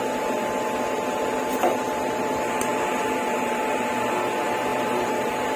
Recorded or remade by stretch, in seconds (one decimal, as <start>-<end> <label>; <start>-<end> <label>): 0.0-1.5 recorded; 1.5-2.3 remade; 2.3-4.7 recorded; 4.7-5.6 remade